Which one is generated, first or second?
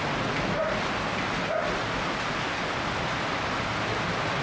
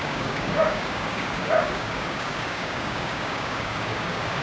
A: second